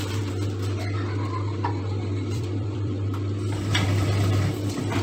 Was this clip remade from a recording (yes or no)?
yes